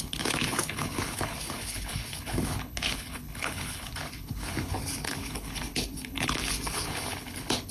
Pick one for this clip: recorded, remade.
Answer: remade